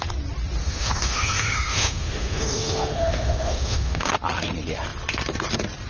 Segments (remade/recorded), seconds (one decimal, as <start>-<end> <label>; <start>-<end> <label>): 0.0-0.6 recorded; 0.6-4.1 remade; 4.1-5.9 recorded